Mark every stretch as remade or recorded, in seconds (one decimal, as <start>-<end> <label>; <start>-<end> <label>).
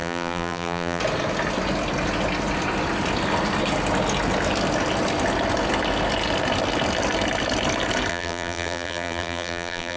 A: 0.0-1.0 remade; 1.0-8.1 recorded; 8.1-10.0 remade